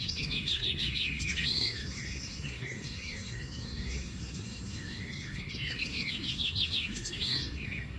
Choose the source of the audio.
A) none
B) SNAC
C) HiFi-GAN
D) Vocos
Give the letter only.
B